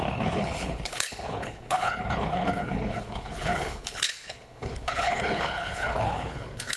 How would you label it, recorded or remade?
remade